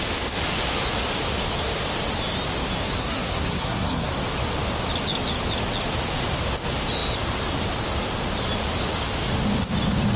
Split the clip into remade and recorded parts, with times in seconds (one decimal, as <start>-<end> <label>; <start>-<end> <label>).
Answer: 0.0-3.0 recorded; 3.0-4.1 remade; 4.1-10.2 recorded